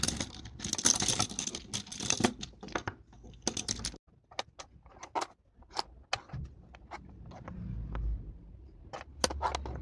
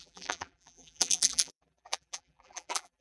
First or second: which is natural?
first